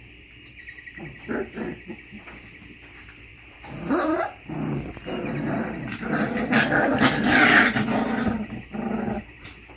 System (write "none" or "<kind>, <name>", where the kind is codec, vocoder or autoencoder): vocoder, BigVGAN v2